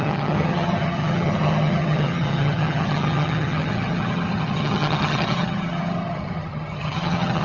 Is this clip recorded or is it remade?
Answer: remade